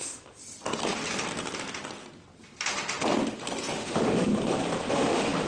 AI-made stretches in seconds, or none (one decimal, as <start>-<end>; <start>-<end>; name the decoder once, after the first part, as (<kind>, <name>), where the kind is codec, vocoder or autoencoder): 0.0-0.4 (autoencoder, DAC-VAE); 3.7-4.3; 4.9-5.5